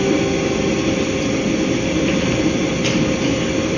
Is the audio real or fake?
real